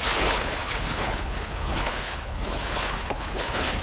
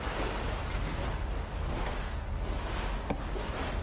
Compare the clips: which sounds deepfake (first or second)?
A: first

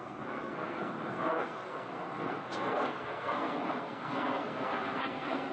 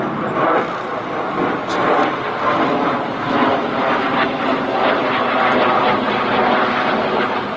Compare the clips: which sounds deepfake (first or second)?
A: first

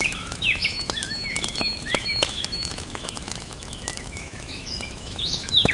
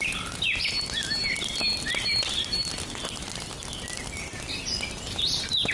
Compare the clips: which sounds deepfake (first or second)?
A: first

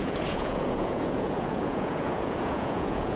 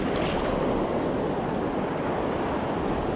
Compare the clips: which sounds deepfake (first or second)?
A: first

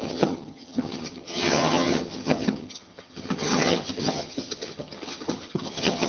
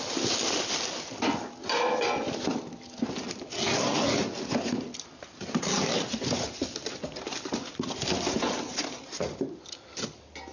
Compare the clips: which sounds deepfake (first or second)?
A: first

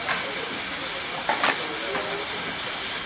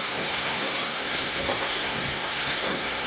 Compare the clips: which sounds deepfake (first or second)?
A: second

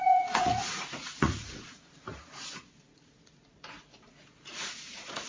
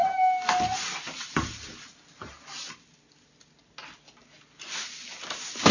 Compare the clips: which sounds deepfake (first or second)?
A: first